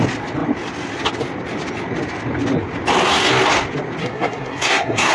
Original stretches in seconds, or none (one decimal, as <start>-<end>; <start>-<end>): 0.0-4.0